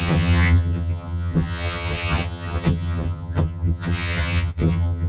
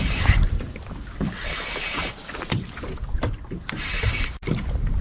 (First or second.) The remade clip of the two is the first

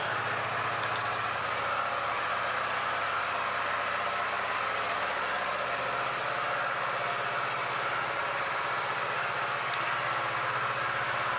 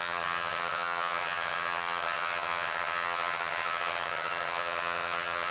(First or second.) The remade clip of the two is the second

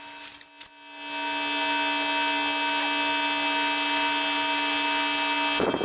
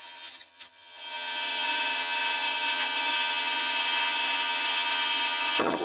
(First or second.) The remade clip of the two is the second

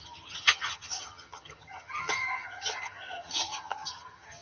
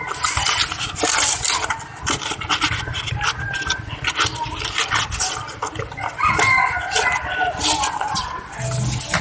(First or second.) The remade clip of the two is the first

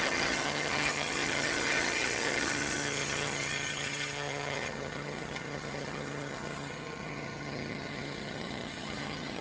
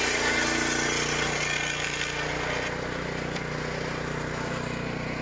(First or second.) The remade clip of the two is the first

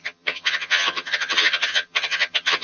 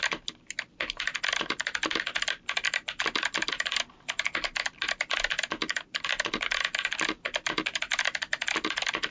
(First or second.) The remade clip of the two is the first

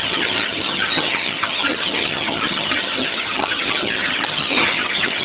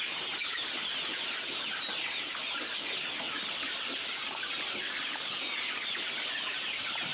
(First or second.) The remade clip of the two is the first